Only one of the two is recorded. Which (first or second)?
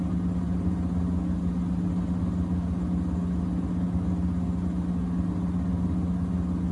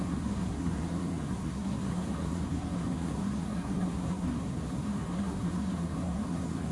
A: first